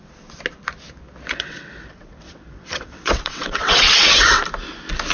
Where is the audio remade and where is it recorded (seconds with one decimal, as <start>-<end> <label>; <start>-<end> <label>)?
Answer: 0.0-1.3 recorded; 1.3-4.4 remade; 4.4-5.1 recorded